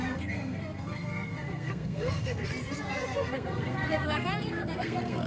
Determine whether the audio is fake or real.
fake